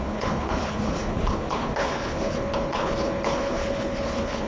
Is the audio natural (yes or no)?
no